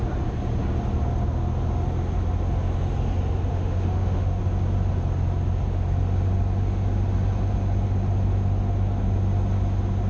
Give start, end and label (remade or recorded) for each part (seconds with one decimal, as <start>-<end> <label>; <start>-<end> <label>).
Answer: 0.0-3.5 recorded; 3.5-4.4 remade; 4.4-10.1 recorded